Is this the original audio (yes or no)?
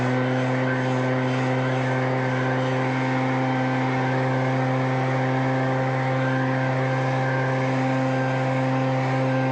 yes